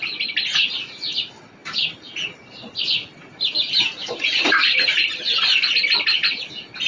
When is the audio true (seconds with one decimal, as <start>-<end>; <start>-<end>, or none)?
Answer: 0.0-6.9

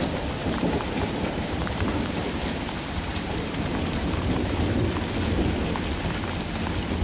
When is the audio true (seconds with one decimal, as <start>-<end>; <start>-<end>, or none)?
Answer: 0.0-0.4; 4.6-7.0

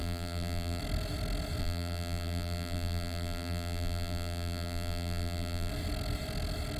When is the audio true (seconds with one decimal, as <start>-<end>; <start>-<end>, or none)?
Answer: 0.8-1.6; 5.7-6.8